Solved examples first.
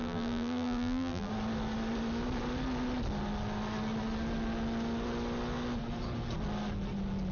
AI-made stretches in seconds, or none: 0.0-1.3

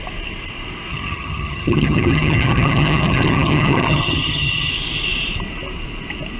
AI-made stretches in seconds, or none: 0.9-4.7

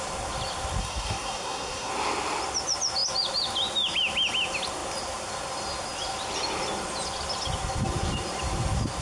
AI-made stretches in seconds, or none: 0.8-1.9

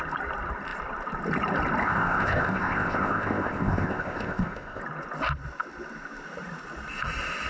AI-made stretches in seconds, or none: 1.8-4.8

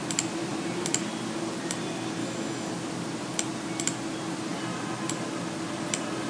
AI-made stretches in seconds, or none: 2.2-2.7

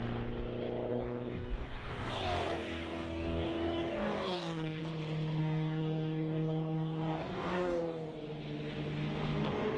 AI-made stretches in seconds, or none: 0.9-4.8; 5.4-8.1